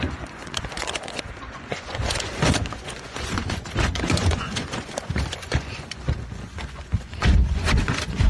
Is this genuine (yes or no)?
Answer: no